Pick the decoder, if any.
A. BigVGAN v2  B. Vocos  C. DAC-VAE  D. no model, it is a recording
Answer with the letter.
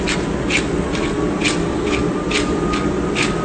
D